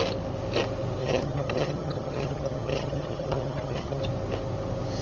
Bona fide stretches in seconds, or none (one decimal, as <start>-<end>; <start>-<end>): 0.0-1.0; 4.0-5.0